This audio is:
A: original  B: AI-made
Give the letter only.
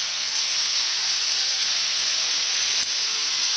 B